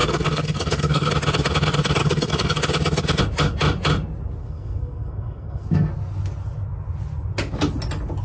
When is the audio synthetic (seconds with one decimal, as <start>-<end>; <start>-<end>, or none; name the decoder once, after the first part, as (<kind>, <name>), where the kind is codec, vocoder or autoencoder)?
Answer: 0.0-1.1 (codec, SNAC); 2.0-2.6; 4.4-5.9